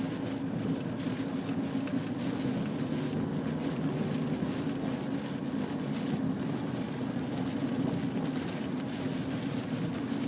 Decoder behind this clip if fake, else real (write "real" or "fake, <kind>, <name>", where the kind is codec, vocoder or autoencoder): real